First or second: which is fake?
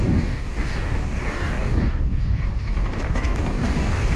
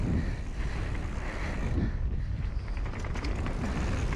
first